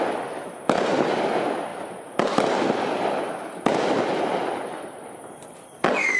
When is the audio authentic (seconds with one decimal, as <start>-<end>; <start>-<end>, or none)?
0.0-6.2